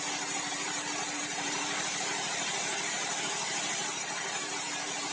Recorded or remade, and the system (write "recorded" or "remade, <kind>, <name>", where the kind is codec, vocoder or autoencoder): remade, vocoder, BigVGAN v2